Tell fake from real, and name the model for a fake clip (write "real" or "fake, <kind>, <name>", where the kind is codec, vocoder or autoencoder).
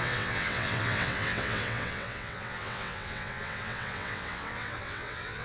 fake, vocoder, WaveNeXt